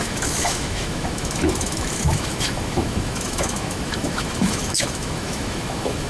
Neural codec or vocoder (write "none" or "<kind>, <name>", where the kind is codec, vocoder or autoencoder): autoencoder, DAC-VAE